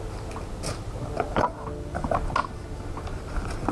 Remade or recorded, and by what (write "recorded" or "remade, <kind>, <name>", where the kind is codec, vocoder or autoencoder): recorded